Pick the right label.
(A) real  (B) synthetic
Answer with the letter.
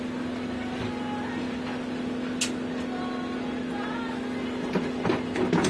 A